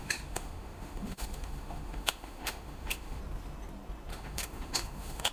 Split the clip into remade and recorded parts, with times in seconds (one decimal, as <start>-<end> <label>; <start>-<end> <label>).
0.0-3.2 remade; 3.2-4.1 recorded; 4.1-5.3 remade